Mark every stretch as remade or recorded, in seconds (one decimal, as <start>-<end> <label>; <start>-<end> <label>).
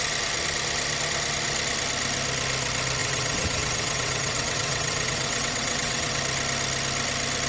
0.0-3.0 recorded; 3.0-6.2 remade; 6.2-7.5 recorded